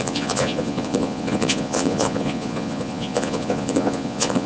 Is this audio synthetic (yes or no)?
yes